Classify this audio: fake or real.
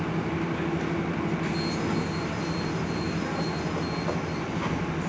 real